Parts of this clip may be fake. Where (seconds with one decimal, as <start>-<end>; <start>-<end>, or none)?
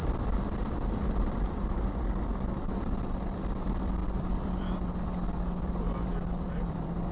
0.0-7.1